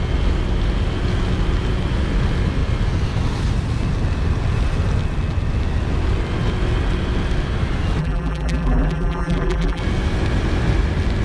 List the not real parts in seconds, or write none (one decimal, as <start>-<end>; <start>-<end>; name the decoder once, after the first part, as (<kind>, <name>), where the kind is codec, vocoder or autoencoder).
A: 8.0-9.8 (vocoder, BigVGAN v2)